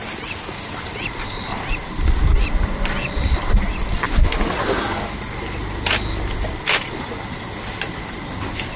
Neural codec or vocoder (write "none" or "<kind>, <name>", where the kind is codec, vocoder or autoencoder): none